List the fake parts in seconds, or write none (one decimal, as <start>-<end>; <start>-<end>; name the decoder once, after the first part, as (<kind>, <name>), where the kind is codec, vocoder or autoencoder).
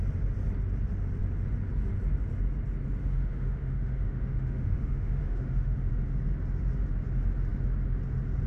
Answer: 3.0-5.9 (autoencoder, DAC-VAE)